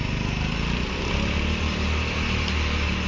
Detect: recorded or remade recorded